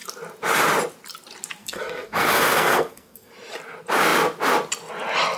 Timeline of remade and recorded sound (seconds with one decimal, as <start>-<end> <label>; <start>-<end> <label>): 0.0-1.6 recorded; 1.6-3.3 remade; 3.3-5.4 recorded